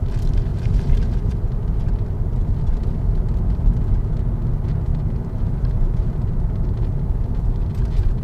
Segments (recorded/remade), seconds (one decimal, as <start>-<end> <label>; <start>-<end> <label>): 0.0-0.5 recorded; 0.5-1.3 remade; 1.3-4.9 recorded; 4.9-7.6 remade; 7.6-8.2 recorded

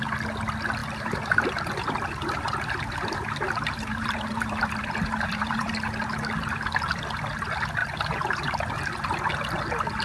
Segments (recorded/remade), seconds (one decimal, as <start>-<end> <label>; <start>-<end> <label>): 0.0-0.8 recorded; 0.8-5.7 remade; 5.7-7.8 recorded; 7.8-8.5 remade; 8.5-10.0 recorded

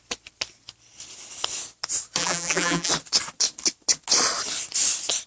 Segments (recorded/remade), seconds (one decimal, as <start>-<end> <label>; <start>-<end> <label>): 0.0-2.2 recorded; 2.2-2.9 remade; 2.9-5.3 recorded

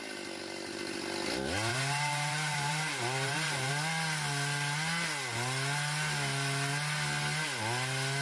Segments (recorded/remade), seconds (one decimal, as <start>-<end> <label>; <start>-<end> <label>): 0.0-1.7 recorded; 1.7-3.7 remade; 3.7-8.2 recorded

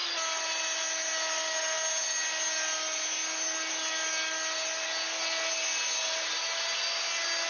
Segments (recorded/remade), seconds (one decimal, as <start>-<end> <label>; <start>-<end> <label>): 0.0-7.5 recorded